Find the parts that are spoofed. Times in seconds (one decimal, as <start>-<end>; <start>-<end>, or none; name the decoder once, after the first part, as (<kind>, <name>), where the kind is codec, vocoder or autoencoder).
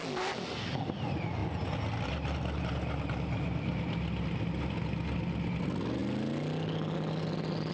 none